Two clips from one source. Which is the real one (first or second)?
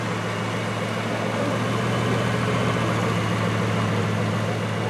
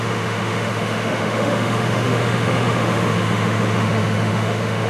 first